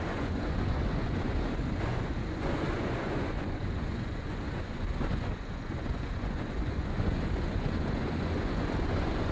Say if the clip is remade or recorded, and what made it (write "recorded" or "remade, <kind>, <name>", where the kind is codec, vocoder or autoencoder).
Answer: remade, vocoder, Vocos